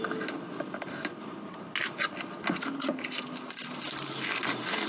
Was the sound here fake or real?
real